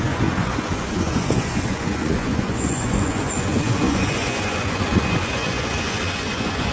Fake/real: fake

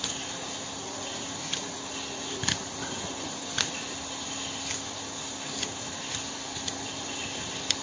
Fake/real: real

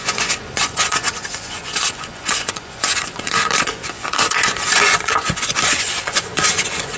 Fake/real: fake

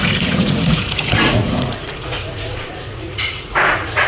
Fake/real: fake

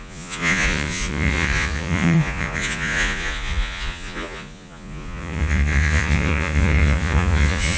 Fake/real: fake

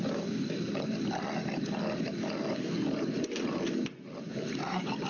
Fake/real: real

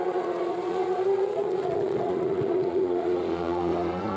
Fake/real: fake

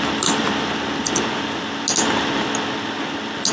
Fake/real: real